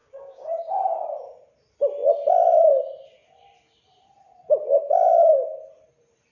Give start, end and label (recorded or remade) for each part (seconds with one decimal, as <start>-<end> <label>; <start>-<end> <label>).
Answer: 0.0-0.6 remade; 0.6-6.3 recorded